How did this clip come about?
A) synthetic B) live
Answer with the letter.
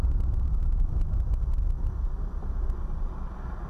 B